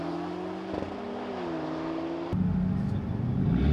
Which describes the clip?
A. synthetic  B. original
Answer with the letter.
B